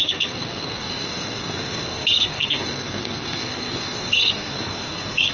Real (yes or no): no